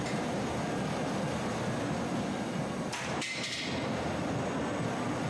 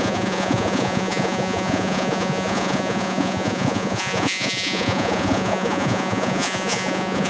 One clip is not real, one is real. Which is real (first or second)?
first